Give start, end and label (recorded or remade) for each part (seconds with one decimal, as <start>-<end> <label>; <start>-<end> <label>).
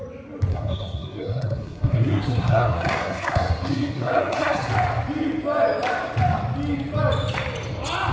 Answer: 0.0-0.5 recorded; 0.5-4.7 remade; 4.7-8.1 recorded